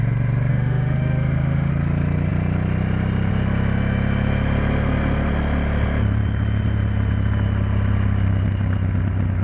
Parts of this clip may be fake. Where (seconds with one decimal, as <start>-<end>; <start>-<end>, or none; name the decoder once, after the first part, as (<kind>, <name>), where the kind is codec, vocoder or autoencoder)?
0.5-1.7 (autoencoder, DAC-VAE)